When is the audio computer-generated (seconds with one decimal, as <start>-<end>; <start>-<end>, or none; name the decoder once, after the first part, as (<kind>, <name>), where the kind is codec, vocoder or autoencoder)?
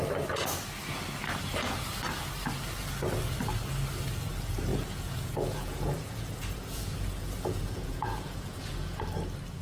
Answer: 4.7-9.0 (vocoder, Vocos)